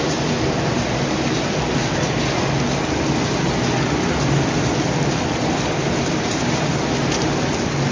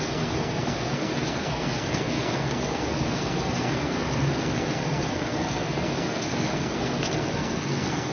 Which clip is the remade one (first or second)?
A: second